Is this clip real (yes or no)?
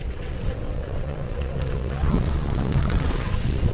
no